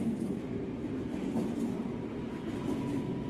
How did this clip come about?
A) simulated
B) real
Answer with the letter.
B